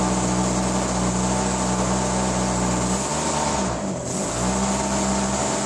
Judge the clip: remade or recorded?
recorded